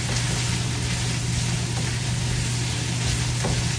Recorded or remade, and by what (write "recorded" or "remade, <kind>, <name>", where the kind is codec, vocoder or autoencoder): recorded